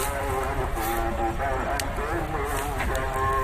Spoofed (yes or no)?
no